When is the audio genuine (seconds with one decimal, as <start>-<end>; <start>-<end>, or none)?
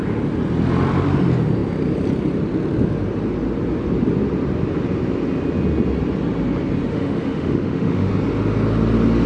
0.0-6.9; 8.1-9.3